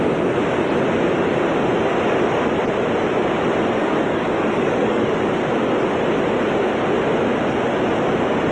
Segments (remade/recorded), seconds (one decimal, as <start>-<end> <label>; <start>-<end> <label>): 0.0-3.8 recorded; 3.8-5.2 remade; 5.2-8.5 recorded